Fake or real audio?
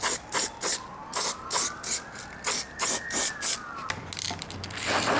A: real